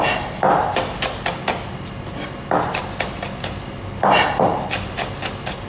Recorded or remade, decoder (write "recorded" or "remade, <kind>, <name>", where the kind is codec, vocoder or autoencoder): recorded